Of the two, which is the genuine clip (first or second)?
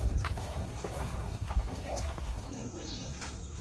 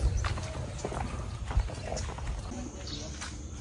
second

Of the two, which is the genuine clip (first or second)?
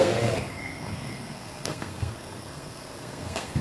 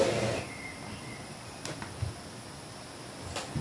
second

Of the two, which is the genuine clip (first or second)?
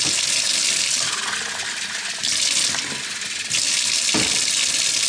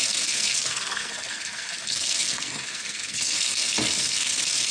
first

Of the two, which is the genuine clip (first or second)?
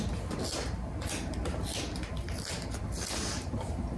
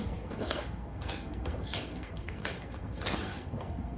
first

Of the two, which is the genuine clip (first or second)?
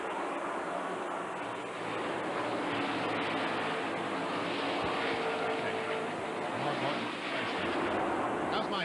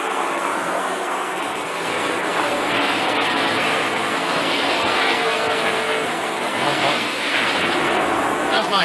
first